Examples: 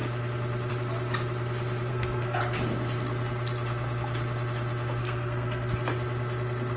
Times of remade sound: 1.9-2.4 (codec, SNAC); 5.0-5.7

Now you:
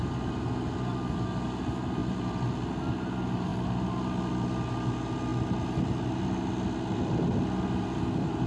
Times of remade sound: none

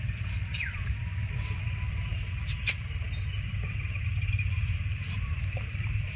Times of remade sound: 0.0-2.1 (vocoder, BigVGAN v2); 2.7-3.1; 4.3-6.2